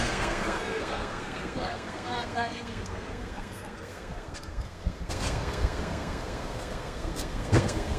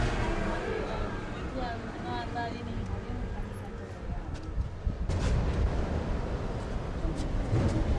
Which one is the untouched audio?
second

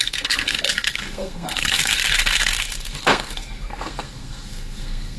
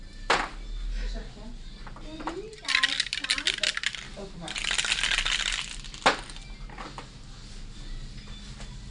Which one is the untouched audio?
second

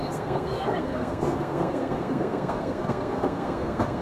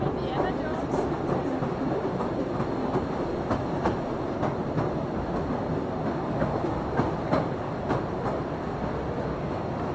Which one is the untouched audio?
second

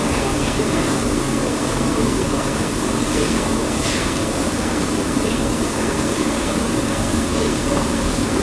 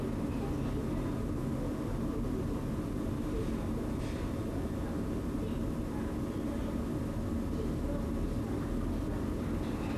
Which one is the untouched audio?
second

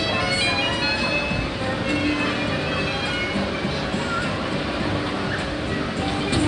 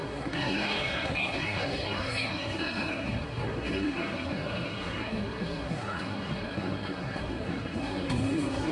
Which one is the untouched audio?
first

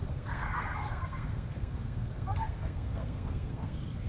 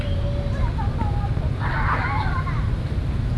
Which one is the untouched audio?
second